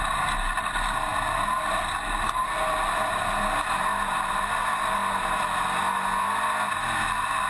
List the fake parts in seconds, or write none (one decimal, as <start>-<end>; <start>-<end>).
none

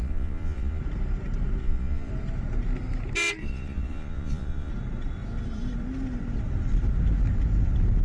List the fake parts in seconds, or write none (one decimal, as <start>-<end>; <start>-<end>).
0.0-0.8; 1.6-2.1; 3.4-4.7

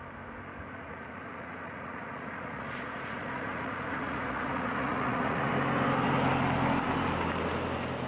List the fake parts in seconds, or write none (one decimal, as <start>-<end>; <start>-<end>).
0.6-5.5

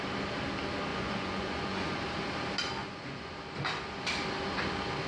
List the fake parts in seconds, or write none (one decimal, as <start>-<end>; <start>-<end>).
0.9-2.0; 2.8-3.3

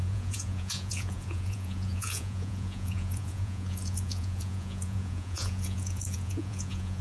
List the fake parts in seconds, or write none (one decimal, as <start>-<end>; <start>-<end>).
0.0-7.0

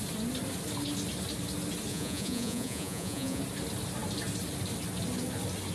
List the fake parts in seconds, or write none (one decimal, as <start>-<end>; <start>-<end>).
1.9-3.4